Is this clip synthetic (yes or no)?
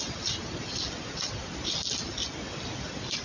no